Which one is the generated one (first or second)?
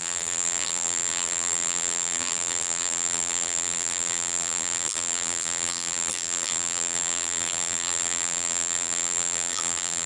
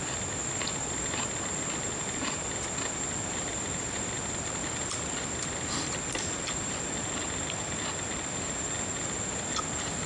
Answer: first